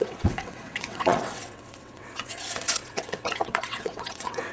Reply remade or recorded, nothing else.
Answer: remade